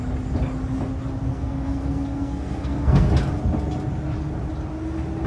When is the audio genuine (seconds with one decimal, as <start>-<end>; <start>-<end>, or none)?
0.0-1.3; 3.1-5.3